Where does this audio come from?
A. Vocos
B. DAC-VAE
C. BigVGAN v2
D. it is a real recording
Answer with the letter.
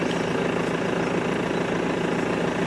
D